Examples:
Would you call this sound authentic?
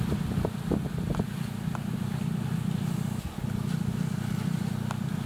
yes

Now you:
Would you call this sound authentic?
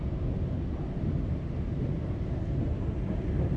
yes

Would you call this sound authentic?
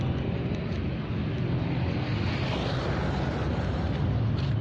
yes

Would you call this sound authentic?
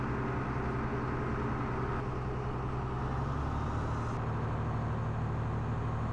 yes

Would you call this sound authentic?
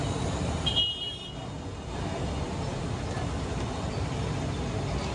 yes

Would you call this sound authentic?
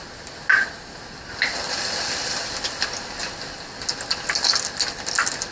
yes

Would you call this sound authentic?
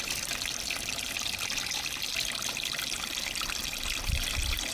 no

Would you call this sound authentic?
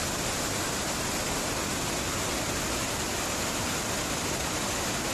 yes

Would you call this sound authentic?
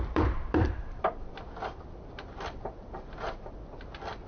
no